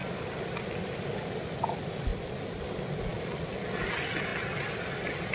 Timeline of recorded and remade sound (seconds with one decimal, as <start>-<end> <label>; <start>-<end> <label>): 0.0-1.4 remade; 1.4-5.3 recorded